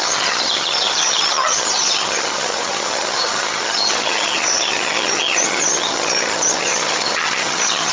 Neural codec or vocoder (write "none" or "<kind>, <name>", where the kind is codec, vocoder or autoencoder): vocoder, HiFi-GAN